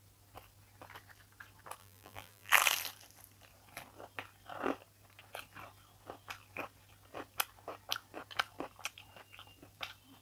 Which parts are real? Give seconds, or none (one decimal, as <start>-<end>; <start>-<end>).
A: 0.0-1.8; 2.5-10.2